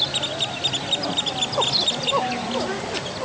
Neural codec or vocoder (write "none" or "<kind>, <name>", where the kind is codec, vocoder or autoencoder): none